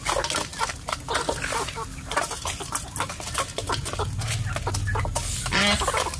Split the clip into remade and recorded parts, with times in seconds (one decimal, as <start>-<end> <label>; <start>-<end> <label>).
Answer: 0.0-6.2 recorded